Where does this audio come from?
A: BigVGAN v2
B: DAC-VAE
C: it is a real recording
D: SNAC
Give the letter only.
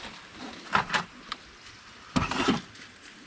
C